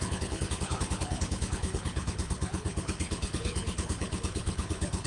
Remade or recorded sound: remade